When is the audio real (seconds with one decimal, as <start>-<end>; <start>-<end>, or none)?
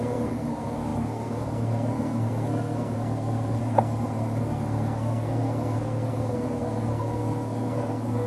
none